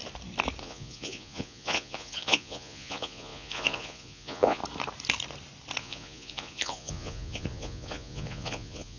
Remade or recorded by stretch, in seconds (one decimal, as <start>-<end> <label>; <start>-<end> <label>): 0.0-0.6 recorded; 0.6-4.6 remade; 4.6-5.8 recorded; 5.8-9.0 remade